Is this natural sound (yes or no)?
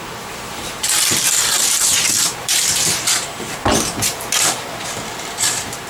no